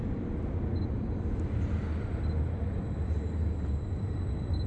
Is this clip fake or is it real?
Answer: real